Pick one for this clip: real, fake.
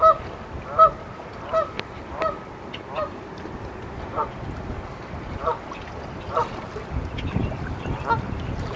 real